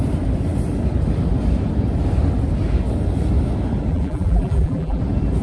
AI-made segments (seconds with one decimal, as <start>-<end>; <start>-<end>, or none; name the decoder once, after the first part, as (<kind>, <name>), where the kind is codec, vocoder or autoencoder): 3.9-5.0 (vocoder, BigVGAN v2)